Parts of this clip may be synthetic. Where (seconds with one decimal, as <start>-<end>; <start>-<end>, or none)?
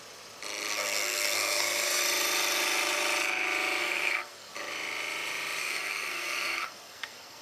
0.7-2.0; 3.8-4.5; 5.6-7.4